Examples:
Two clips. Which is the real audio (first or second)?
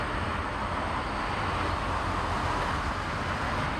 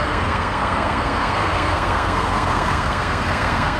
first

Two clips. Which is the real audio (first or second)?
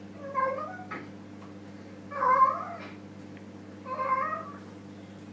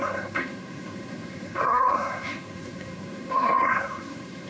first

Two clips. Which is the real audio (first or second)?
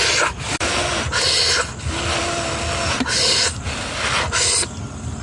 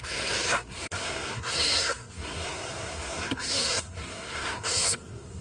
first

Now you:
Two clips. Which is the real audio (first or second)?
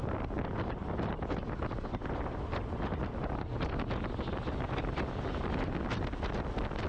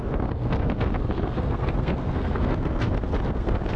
first